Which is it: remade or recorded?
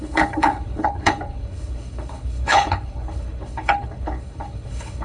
remade